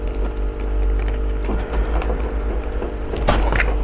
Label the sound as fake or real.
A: real